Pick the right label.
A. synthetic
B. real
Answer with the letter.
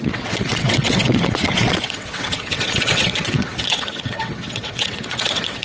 A